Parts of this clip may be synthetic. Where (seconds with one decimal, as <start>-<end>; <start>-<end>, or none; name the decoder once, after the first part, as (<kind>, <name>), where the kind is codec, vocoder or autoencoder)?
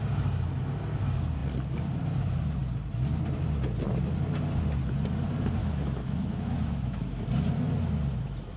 5.6-7.2 (autoencoder, DAC-VAE)